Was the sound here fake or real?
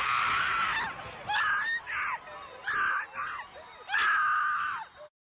real